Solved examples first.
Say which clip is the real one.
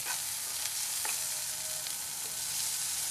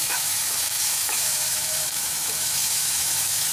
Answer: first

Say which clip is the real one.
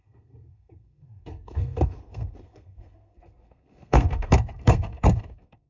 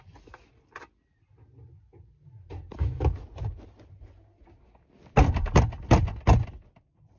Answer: second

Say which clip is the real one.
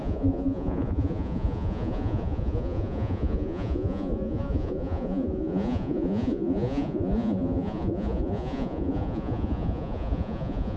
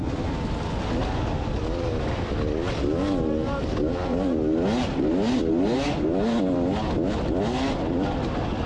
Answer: second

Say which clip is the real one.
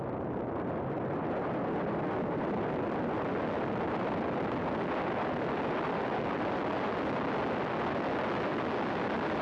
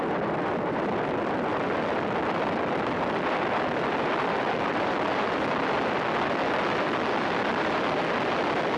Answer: first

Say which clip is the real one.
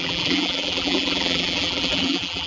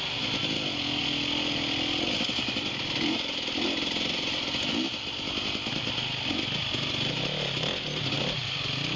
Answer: second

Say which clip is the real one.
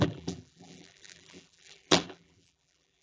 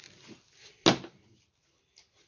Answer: second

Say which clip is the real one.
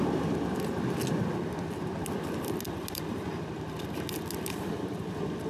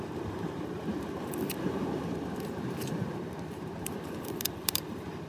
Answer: first